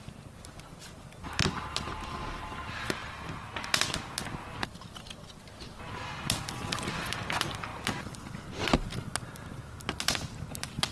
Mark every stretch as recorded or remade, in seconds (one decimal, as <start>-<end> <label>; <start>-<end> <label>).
0.0-10.9 recorded

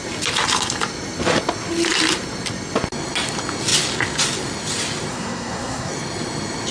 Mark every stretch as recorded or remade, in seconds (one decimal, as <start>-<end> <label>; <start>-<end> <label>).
0.0-5.1 recorded; 5.1-5.9 remade; 5.9-6.7 recorded

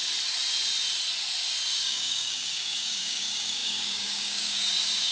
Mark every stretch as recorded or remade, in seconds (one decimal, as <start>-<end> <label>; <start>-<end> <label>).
0.0-1.7 recorded; 1.7-5.1 remade

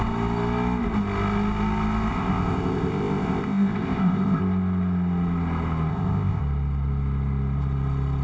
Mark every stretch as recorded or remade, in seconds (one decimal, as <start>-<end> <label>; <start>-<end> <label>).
0.0-2.1 recorded; 2.1-4.4 remade; 4.4-5.9 recorded; 5.9-6.4 remade; 6.4-8.2 recorded

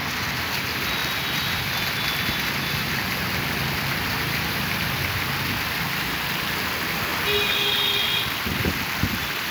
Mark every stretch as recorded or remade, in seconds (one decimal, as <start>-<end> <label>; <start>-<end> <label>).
0.0-9.5 recorded

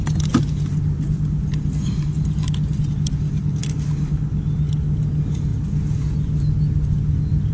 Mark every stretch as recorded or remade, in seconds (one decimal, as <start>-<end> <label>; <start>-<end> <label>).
0.0-7.5 recorded

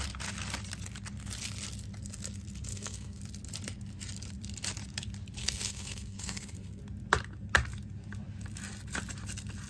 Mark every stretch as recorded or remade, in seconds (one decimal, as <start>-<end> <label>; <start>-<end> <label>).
0.0-2.7 recorded; 2.7-3.2 remade; 3.2-5.4 recorded; 5.4-6.8 remade; 6.8-9.7 recorded